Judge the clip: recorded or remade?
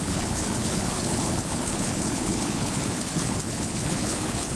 remade